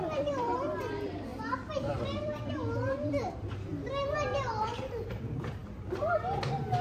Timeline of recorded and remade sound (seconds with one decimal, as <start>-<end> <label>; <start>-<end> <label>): 0.0-3.7 remade; 3.7-4.6 recorded; 4.6-6.8 remade